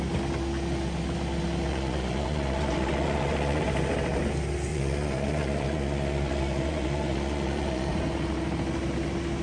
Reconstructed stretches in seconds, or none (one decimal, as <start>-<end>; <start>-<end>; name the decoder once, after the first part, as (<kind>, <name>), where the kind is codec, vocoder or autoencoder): 1.7-3.6 (vocoder, Vocos); 4.7-8.0